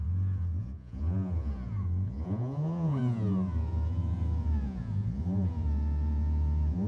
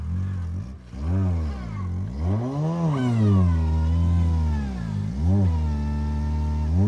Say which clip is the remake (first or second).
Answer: first